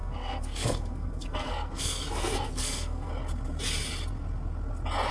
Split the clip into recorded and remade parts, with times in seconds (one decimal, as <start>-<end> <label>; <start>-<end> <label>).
0.0-3.1 remade; 3.1-5.1 recorded